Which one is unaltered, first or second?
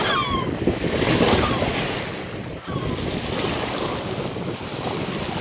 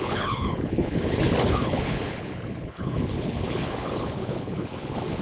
first